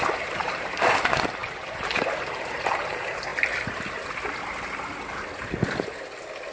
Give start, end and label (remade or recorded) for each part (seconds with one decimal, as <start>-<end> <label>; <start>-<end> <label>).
0.0-3.3 remade; 3.3-6.5 recorded